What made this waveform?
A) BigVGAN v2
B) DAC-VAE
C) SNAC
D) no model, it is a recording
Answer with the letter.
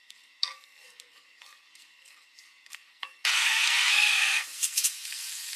C